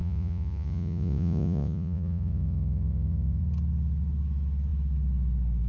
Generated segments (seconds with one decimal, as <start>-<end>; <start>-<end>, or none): 0.0-3.4